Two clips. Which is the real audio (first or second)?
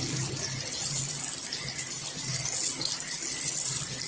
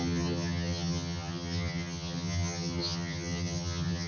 first